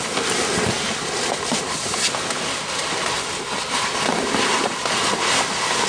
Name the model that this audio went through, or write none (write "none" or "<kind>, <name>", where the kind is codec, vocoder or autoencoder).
none